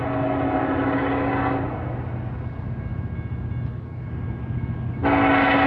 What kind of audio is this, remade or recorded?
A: recorded